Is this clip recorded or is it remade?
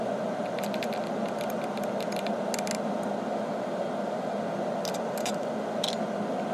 recorded